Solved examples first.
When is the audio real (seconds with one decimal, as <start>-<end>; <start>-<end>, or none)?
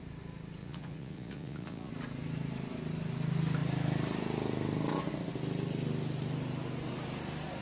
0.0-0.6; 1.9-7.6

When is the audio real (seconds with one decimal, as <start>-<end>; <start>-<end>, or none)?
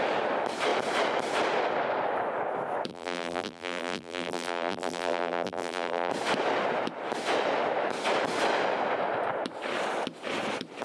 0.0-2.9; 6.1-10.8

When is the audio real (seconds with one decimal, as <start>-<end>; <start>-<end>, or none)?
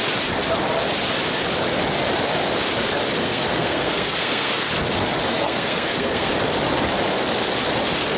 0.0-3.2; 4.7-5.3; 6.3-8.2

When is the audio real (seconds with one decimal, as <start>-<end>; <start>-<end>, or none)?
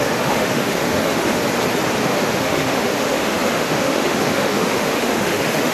1.4-2.0